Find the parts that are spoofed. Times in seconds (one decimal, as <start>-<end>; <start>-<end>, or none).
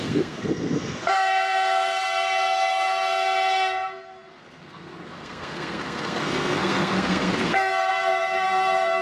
0.0-9.0